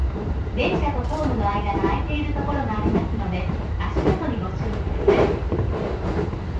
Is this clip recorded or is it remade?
remade